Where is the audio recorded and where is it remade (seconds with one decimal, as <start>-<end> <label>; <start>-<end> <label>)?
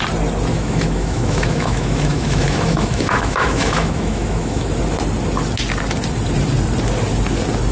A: 0.0-0.5 recorded; 0.5-4.7 remade; 4.7-7.7 recorded